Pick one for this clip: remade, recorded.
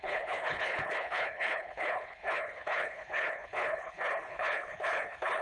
remade